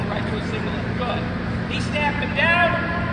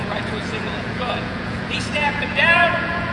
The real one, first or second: first